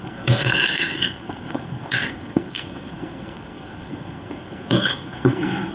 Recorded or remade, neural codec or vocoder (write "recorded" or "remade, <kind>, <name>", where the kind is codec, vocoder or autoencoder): remade, codec, SNAC